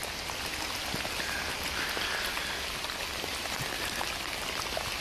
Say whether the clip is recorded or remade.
recorded